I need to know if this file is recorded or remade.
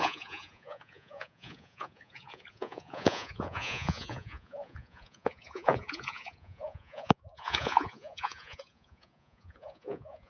remade